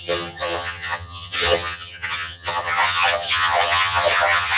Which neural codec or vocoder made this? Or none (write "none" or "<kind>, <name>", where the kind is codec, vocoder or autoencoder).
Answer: vocoder, HiFi-GAN